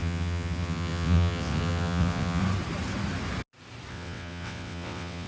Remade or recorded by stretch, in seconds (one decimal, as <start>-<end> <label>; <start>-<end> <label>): 0.0-2.4 remade; 2.4-3.9 recorded; 3.9-5.3 remade